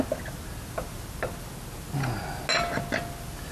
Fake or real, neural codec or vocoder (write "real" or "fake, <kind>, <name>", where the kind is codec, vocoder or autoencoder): real